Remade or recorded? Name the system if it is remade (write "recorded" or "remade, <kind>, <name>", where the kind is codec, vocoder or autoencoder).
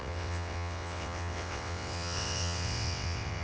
remade, vocoder, WaveNeXt